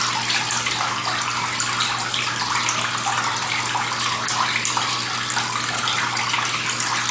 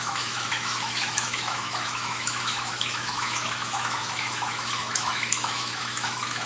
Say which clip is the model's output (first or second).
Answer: second